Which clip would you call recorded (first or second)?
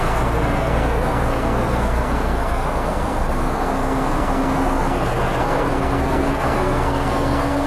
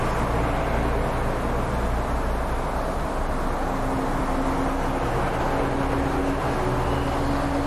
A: second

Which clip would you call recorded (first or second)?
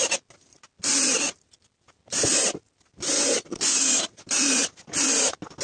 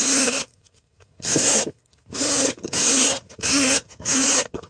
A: first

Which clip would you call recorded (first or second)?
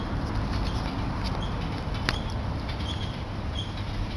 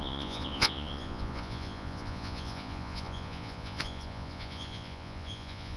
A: first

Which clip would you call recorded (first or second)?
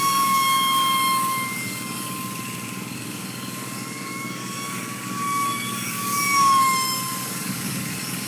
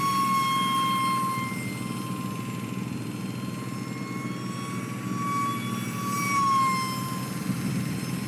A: second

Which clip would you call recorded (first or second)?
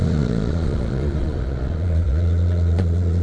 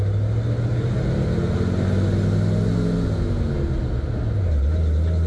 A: second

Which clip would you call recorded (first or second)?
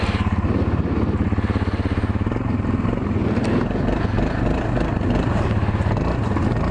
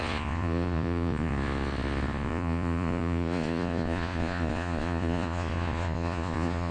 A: first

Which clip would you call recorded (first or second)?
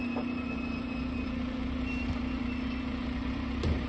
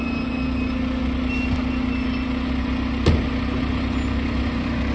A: second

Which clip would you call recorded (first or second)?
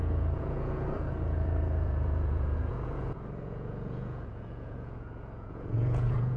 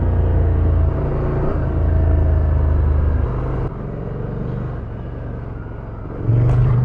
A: second